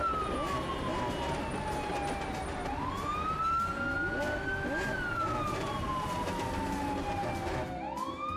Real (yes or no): yes